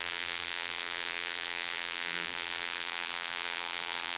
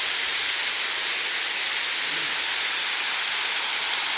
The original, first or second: second